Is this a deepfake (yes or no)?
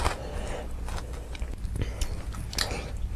no